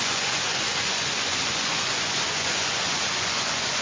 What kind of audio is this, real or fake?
fake